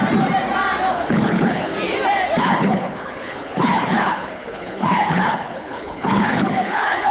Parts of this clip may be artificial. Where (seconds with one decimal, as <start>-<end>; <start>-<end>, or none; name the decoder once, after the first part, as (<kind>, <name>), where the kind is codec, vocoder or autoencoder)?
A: 0.9-1.7 (codec, HILCodec); 2.4-7.1